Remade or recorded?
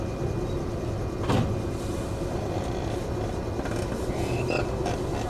recorded